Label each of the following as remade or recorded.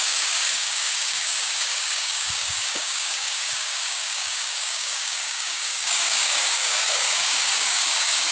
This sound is remade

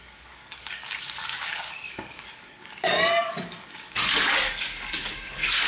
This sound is remade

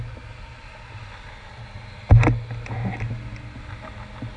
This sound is recorded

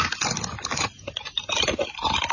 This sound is recorded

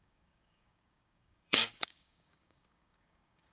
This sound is remade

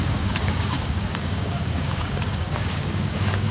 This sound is remade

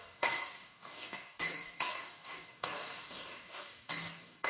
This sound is remade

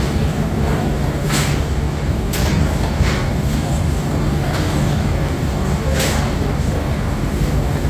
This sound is remade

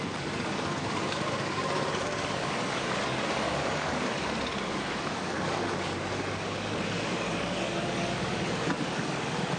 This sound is remade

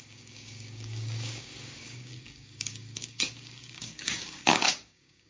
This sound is remade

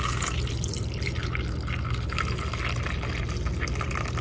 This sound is recorded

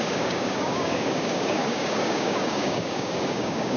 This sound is remade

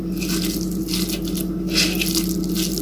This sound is recorded